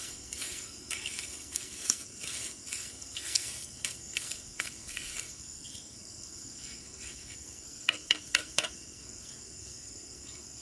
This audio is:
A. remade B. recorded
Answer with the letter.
A